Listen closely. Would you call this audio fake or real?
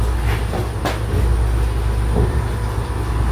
real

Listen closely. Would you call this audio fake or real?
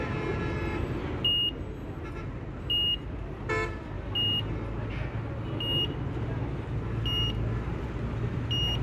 real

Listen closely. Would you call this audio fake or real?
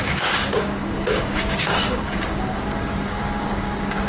fake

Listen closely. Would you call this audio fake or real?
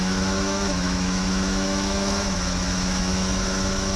fake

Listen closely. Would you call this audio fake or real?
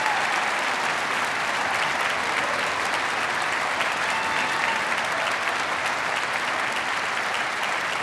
real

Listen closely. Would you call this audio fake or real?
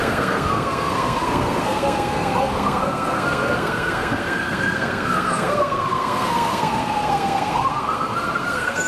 fake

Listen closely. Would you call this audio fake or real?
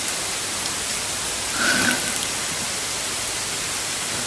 real